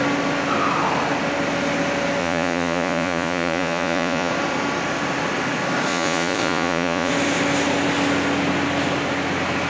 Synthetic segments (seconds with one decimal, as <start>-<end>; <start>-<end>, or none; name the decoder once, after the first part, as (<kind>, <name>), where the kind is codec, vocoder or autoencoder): 2.2-4.3 (vocoder, Vocos); 5.9-7.1